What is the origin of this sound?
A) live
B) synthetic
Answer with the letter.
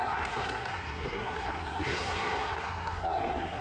B